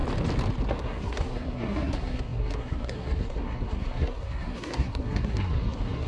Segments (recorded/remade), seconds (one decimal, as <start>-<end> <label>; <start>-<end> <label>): 0.0-0.7 recorded; 0.7-6.1 remade